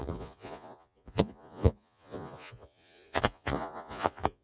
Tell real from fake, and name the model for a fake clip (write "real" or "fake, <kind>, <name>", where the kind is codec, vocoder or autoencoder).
fake, vocoder, Vocos